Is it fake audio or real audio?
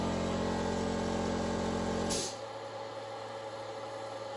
real